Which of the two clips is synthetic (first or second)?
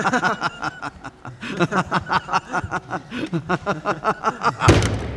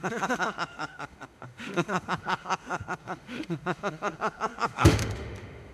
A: second